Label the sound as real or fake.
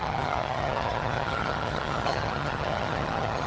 fake